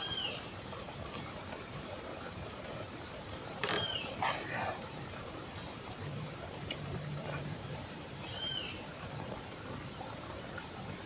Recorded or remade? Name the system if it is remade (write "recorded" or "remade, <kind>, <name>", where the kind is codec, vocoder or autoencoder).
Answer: remade, vocoder, BigVGAN v2